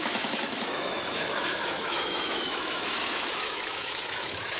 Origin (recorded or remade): remade